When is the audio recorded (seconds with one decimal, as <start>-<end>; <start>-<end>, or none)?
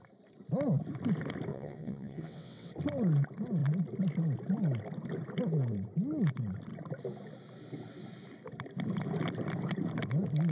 0.0-1.5; 2.7-10.5